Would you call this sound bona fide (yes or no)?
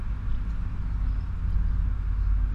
yes